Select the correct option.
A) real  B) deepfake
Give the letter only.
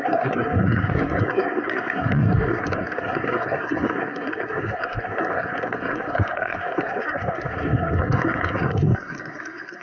B